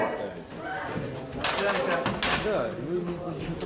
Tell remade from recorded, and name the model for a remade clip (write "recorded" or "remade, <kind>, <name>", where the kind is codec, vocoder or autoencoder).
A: recorded